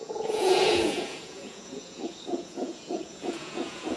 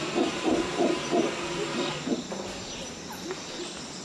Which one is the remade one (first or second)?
first